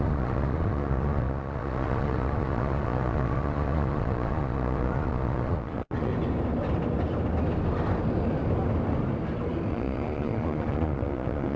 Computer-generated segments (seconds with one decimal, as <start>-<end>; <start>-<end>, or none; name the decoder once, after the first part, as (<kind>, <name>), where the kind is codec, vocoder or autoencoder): 0.0-6.1 (vocoder, Vocos); 9.7-11.6